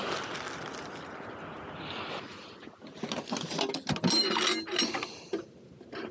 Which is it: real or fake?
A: real